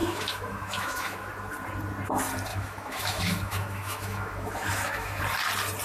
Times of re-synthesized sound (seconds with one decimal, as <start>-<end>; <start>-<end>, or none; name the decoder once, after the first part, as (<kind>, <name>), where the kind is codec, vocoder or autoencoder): 0.0-1.3 (autoencoder, DAC-VAE); 2.5-5.2